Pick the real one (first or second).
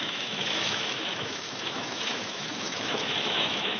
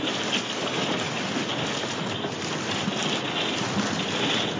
second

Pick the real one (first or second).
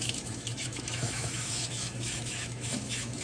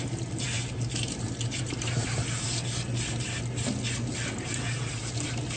second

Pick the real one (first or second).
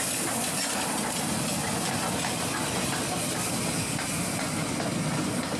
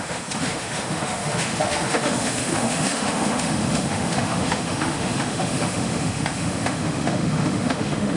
first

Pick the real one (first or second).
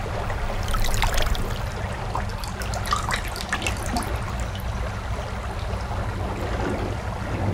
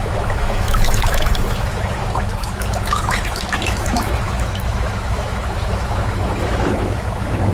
first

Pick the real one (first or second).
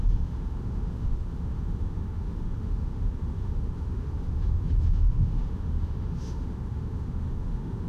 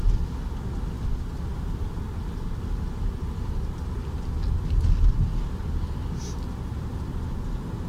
second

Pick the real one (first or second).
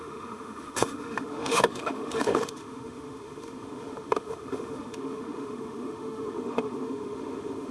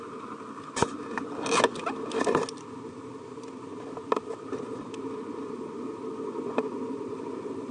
second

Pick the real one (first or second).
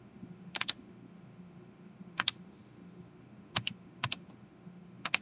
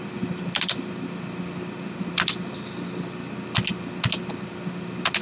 second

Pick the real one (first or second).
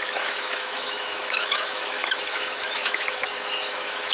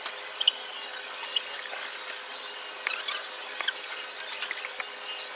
second